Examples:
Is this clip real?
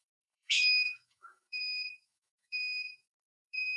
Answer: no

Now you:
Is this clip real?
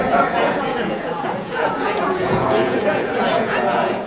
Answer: no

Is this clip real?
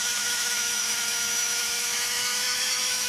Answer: no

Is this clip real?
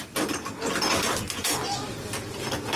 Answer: yes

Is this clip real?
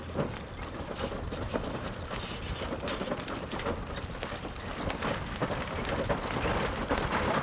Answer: yes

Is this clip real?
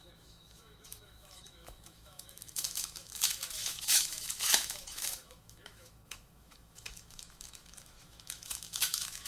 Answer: no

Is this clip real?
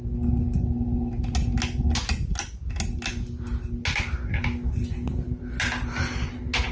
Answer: yes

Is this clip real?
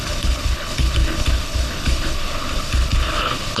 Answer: no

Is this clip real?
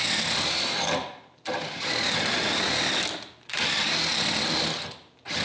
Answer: yes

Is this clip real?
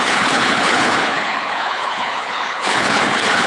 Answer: no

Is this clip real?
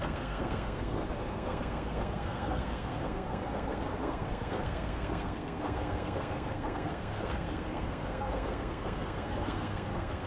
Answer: no